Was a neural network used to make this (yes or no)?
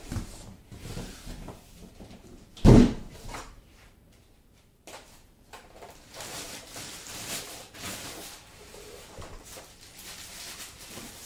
yes